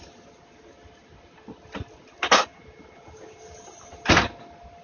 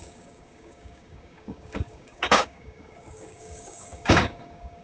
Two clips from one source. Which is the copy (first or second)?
second